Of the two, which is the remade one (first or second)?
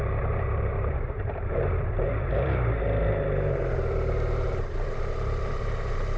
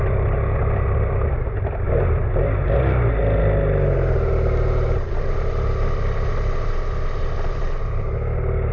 first